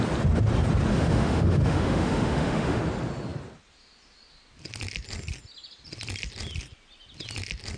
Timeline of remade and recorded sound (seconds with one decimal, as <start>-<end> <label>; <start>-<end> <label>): 0.0-0.9 recorded; 0.9-2.8 remade; 2.8-7.8 recorded